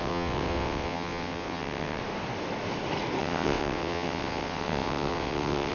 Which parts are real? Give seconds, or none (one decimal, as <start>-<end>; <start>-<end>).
2.0-3.2